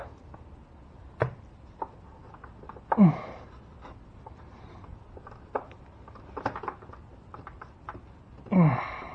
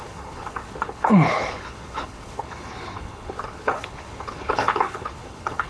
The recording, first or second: first